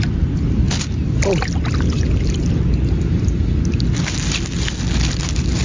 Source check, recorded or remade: recorded